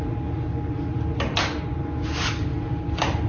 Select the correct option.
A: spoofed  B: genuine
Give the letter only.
B